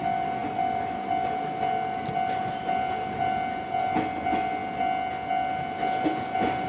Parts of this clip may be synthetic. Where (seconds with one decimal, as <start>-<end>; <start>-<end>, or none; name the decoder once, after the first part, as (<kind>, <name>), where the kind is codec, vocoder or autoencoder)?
none